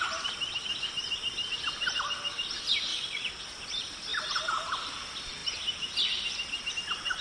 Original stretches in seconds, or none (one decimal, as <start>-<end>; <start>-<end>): 0.0-2.9; 3.4-7.2